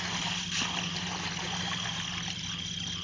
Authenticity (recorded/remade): recorded